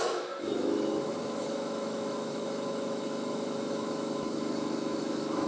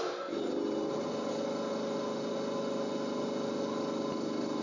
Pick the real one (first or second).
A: second